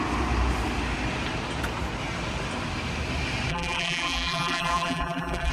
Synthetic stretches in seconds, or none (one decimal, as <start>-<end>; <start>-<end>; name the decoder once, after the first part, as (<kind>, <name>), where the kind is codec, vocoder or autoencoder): 3.5-5.5 (vocoder, BigVGAN v2)